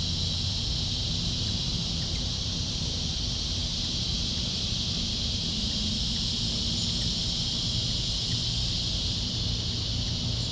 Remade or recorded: recorded